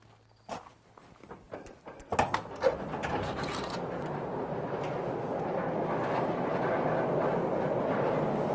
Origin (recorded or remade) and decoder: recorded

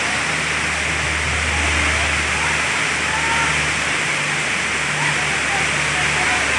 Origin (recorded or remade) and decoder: recorded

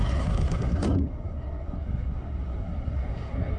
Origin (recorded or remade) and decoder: remade, codec, SNAC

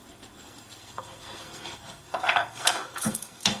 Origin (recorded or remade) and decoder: remade, codec, SNAC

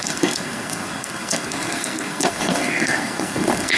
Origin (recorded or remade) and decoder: remade, codec, SNAC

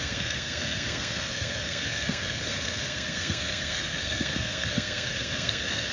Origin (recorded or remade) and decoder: remade, codec, SNAC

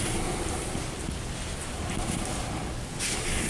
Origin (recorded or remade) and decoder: recorded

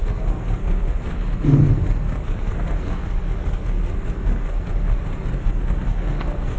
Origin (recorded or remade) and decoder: remade, codec, SNAC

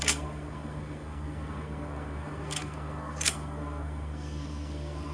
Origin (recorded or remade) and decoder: remade, codec, SNAC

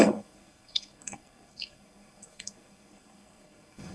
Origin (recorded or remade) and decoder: remade, codec, SNAC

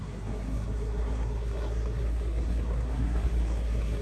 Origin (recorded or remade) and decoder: remade, codec, SNAC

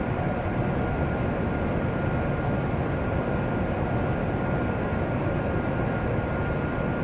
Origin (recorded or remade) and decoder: recorded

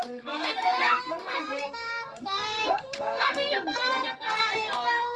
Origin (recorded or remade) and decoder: remade, codec, SNAC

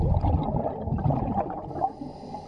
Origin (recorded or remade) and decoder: recorded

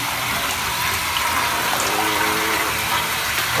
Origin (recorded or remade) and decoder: recorded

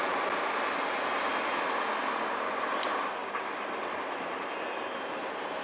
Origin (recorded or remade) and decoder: recorded